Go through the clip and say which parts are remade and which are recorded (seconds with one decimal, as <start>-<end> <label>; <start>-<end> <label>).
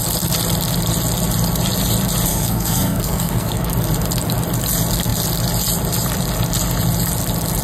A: 0.0-2.3 recorded; 2.3-3.7 remade; 3.7-7.6 recorded